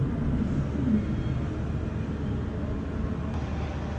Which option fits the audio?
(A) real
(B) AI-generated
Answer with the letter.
A